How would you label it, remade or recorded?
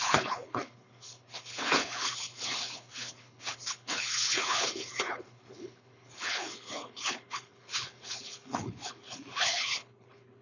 remade